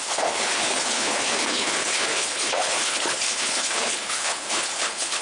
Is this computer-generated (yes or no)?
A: yes